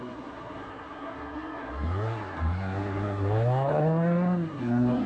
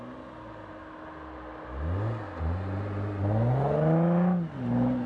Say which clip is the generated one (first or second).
first